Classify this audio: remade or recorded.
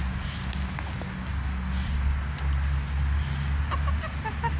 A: recorded